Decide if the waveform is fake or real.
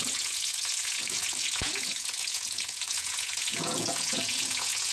fake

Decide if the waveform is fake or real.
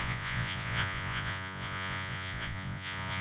fake